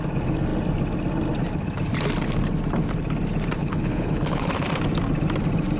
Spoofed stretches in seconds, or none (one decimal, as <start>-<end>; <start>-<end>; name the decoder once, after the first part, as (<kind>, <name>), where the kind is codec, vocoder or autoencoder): 3.6-4.5 (codec, HILCodec)